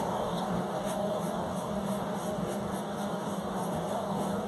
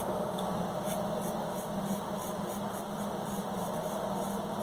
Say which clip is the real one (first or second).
second